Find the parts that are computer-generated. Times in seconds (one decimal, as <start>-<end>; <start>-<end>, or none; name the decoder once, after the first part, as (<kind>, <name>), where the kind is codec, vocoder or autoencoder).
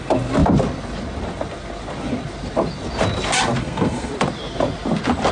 3.6-4.1 (codec, SNAC)